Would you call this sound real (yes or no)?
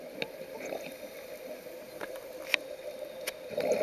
yes